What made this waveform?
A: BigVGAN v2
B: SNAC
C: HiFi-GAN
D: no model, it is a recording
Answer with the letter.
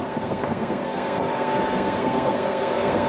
B